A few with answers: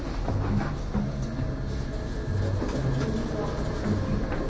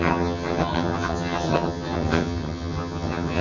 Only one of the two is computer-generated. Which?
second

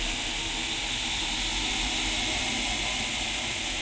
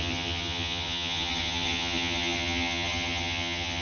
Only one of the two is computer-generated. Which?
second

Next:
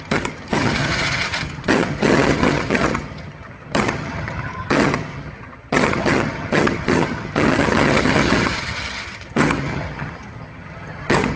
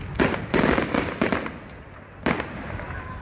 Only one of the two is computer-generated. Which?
first